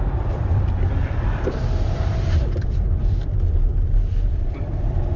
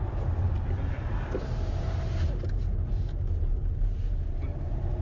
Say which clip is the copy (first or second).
first